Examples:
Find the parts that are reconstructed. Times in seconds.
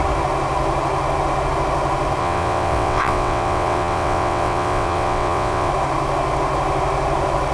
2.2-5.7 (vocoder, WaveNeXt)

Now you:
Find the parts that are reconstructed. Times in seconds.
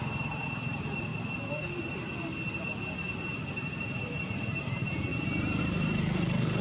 0.0-1.1 (vocoder, BigVGAN v2); 2.8-5.1; 5.6-6.6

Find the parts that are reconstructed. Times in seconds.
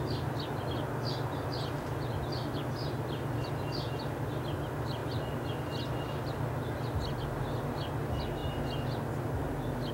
none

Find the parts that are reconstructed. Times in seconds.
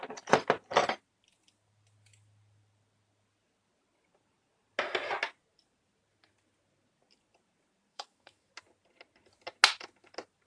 7.9-8.5 (autoencoder, DAC-VAE)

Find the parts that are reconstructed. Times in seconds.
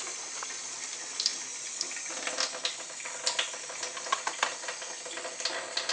none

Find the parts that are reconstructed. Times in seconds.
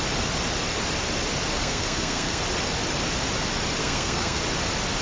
1.6-2.4 (codec, SNAC); 3.8-4.4